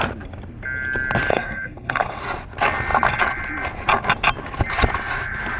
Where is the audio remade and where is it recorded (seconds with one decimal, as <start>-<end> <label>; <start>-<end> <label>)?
0.0-1.3 recorded; 1.3-2.2 remade; 2.2-5.6 recorded